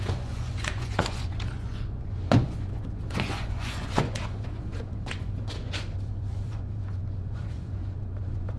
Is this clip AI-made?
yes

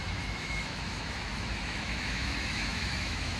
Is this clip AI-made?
yes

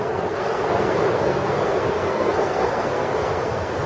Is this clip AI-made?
yes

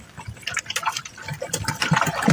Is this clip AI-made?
no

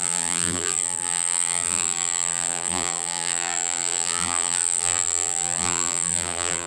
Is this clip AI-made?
yes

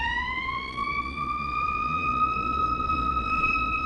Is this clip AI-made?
yes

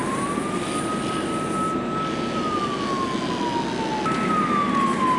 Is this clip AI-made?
no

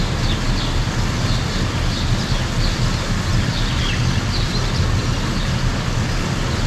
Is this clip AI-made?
no